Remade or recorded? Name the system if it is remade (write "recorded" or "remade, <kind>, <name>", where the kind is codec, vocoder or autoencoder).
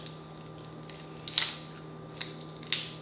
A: recorded